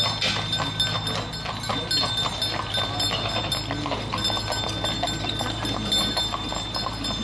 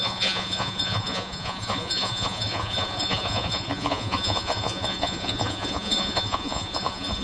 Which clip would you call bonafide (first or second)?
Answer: first